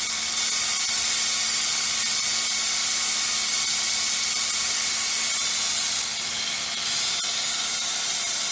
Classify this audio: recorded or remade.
recorded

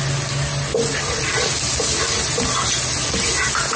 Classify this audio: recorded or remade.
recorded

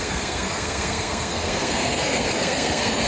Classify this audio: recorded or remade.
remade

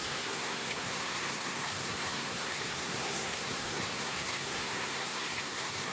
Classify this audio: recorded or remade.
remade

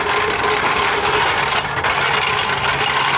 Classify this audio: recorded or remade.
recorded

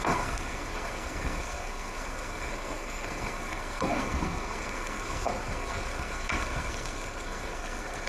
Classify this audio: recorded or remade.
remade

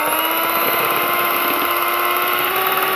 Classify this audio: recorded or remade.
recorded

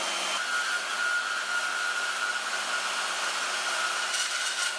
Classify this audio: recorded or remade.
recorded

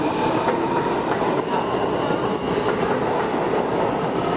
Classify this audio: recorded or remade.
recorded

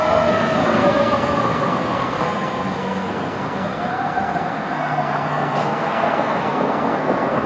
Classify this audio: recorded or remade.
remade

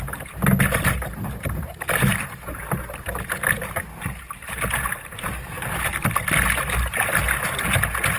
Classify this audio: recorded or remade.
recorded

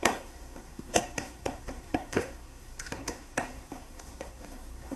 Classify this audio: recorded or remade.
remade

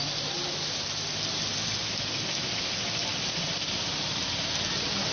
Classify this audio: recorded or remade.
recorded